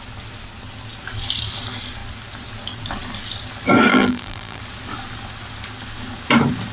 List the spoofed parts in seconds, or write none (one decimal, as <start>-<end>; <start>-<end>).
3.9-4.6